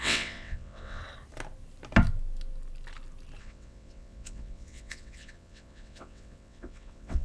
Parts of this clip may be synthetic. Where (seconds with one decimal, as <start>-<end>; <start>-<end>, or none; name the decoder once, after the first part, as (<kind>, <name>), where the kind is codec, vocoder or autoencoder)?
0.0-1.0 (vocoder, WaveNeXt); 3.4-7.2